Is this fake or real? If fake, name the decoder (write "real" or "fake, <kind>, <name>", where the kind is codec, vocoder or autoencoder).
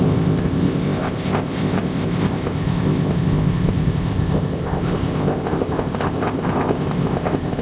fake, codec, ZipCodec